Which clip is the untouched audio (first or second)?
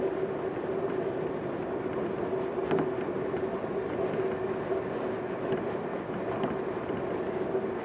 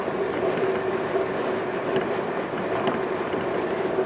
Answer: first